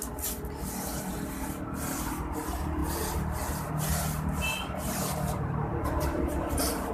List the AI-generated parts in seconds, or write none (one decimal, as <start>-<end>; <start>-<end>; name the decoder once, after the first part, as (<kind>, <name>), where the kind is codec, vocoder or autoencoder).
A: 2.8-6.9 (vocoder, BigVGAN v2)